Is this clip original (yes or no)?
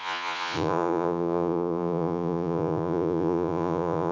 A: no